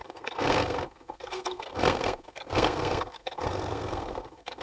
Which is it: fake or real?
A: fake